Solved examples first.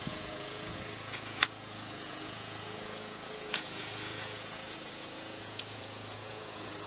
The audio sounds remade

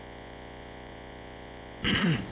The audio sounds remade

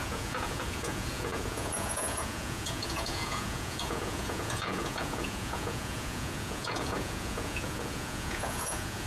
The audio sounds remade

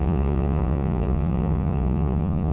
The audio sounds remade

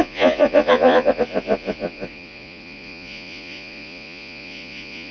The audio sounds remade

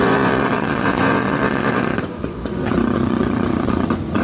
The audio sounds remade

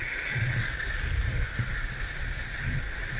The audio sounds recorded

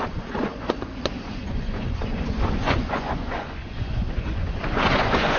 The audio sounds remade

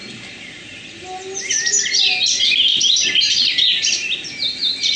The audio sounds recorded